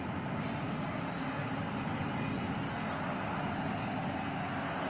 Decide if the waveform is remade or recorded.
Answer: recorded